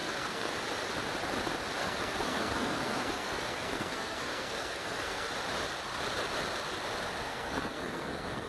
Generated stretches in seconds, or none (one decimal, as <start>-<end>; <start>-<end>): 0.0-0.5; 1.8-5.3; 7.2-8.5